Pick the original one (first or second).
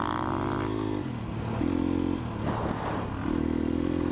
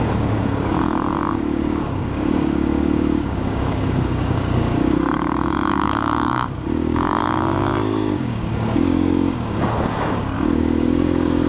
first